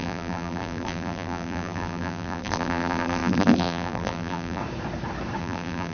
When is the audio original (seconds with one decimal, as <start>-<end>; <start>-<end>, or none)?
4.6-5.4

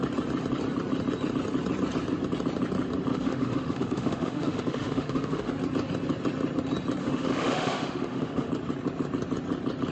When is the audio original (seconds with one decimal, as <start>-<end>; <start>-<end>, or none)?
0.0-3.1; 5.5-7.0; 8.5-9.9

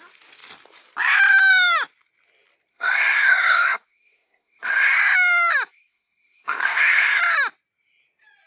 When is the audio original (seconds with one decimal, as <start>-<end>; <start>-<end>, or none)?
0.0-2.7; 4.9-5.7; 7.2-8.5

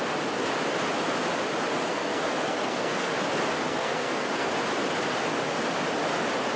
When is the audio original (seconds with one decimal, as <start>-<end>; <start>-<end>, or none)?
0.0-1.9; 3.1-3.5; 4.5-6.6